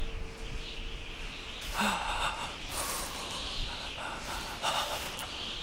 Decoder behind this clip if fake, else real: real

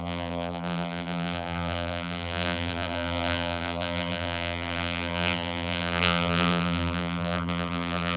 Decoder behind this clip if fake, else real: fake, vocoder, BigVGAN v2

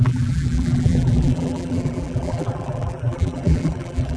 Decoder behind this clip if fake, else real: fake, vocoder, BigVGAN v2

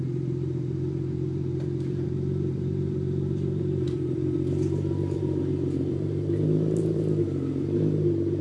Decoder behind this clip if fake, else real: fake, vocoder, BigVGAN v2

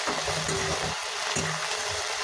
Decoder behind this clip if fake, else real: real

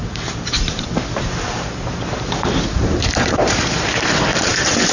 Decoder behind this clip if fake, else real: fake, vocoder, BigVGAN v2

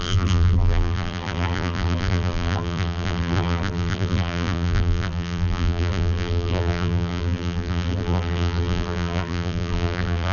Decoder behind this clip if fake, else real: fake, vocoder, BigVGAN v2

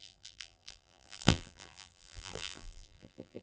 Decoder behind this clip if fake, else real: fake, vocoder, BigVGAN v2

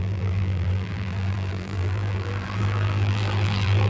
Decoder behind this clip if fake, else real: fake, vocoder, BigVGAN v2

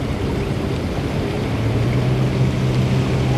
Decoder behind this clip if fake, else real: real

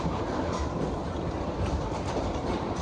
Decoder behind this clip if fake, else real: fake, vocoder, BigVGAN v2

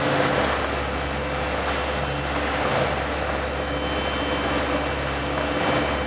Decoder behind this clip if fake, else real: real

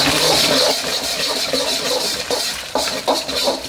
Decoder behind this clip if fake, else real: fake, vocoder, BigVGAN v2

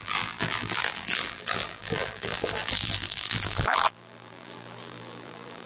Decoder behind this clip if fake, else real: fake, vocoder, BigVGAN v2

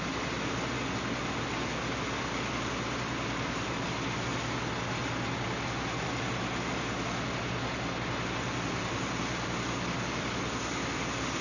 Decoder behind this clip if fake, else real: real